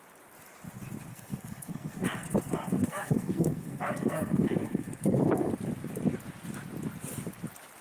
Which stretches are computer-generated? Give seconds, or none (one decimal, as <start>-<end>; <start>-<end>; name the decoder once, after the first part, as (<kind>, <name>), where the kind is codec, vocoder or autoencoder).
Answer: 1.1-5.5 (codec, SNAC)

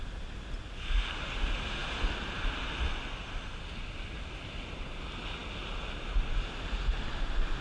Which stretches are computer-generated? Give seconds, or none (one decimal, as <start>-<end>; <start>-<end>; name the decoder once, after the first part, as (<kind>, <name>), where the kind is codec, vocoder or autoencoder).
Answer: none